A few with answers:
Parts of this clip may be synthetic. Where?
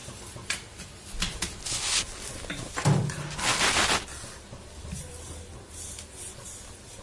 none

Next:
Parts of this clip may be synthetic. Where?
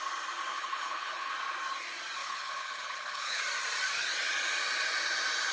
0.5-1.3 (codec, HILCodec); 2.2-3.4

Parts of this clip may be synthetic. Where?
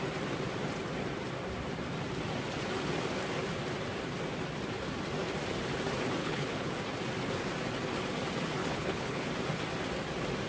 6.2-6.7 (codec, HILCodec); 8.6-9.3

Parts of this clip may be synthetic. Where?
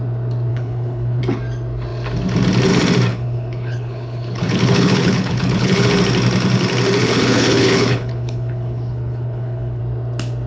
0.5-1.2 (codec, HILCodec); 3.1-5.9; 7.0-9.8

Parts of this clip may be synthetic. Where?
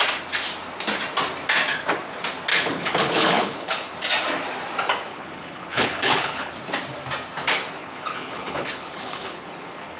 2.5-3.9 (codec, HILCodec); 5.1-6.5; 7.8-10.0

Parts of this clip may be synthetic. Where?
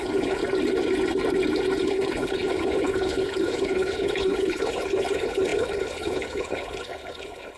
0.0-0.4 (codec, HILCodec); 1.8-7.6